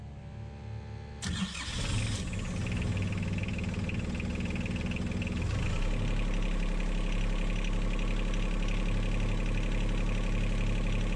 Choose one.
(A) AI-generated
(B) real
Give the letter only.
B